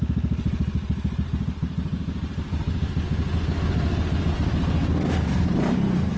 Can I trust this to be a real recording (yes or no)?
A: yes